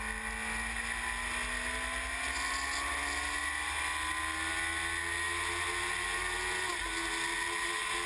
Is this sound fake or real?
real